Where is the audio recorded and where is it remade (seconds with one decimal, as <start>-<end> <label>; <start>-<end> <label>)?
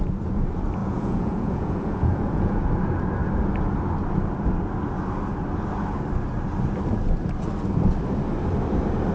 0.0-0.8 recorded; 0.8-2.7 remade; 2.7-9.1 recorded